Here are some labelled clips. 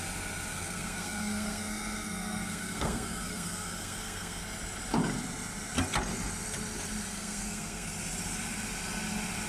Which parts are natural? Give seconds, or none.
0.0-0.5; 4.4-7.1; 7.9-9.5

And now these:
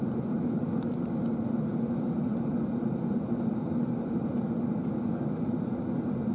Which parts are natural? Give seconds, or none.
0.0-6.3

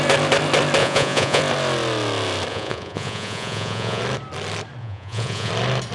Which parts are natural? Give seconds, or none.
0.0-0.8; 1.4-2.5; 4.0-4.8; 5.5-5.9

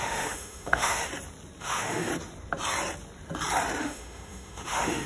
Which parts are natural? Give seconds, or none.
1.1-1.6; 2.1-3.8

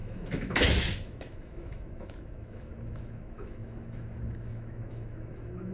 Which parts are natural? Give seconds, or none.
none

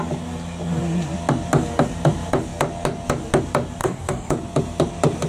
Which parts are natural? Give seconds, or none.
0.0-3.8; 4.3-5.3

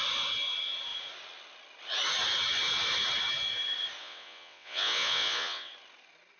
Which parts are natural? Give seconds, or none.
0.0-4.0; 5.7-6.4

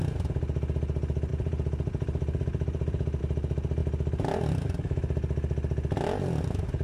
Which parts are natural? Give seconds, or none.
0.0-1.3; 3.2-6.8